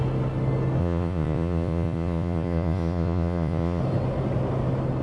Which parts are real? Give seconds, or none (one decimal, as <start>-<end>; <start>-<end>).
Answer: 0.0-0.8; 3.8-5.0